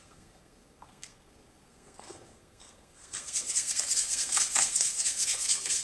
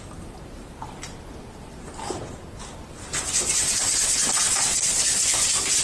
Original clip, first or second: second